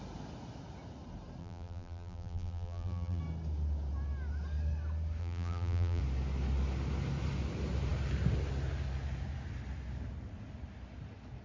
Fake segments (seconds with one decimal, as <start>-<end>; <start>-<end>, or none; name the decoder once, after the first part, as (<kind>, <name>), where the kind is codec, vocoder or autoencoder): 1.4-3.2 (vocoder, BigVGAN v2); 5.2-6.0